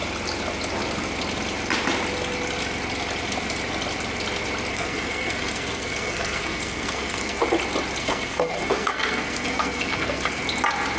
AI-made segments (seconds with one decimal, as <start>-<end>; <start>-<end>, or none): 4.7-7.4; 8.0-10.4